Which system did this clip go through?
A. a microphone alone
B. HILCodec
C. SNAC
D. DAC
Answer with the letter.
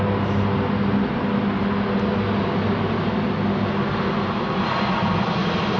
A